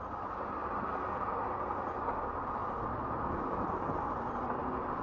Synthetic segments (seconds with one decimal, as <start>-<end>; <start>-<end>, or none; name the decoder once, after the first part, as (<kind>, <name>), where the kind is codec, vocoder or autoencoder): none